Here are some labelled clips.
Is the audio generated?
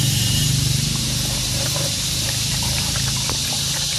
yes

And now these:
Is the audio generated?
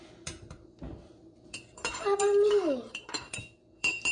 yes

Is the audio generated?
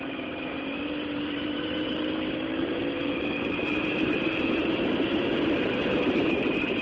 yes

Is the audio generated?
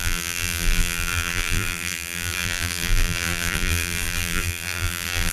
yes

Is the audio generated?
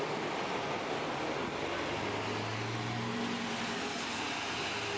no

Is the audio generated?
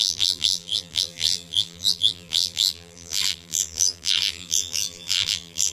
yes